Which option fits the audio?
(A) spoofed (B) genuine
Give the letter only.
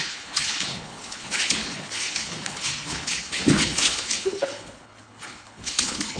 A